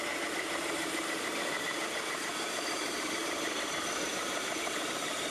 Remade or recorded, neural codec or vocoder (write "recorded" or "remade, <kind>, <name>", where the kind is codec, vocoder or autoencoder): remade, vocoder, BigVGAN v2